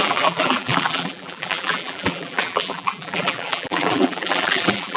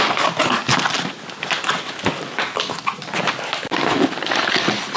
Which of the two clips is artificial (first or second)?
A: first